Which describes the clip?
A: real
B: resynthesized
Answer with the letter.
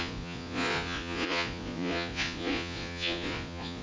B